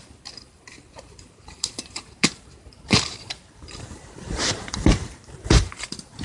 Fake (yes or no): yes